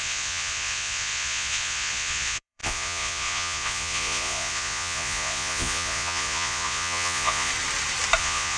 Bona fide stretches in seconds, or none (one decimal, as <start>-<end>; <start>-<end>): 7.5-8.2